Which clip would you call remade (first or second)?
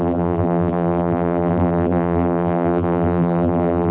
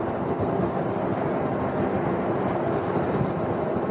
first